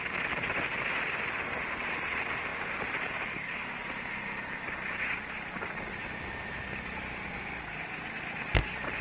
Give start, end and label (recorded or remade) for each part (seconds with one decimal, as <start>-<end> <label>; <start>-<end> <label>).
0.0-9.0 recorded